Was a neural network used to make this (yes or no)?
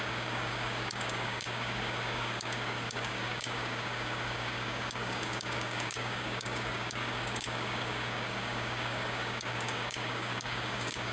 yes